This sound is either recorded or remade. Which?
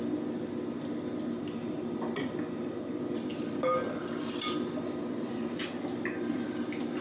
recorded